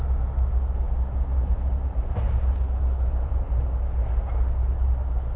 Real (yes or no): yes